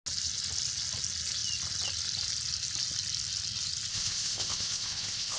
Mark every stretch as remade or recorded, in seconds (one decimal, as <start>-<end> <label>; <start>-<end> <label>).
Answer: 0.0-3.9 recorded; 3.9-5.4 remade